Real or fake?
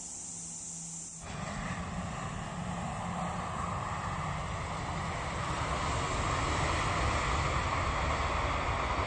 real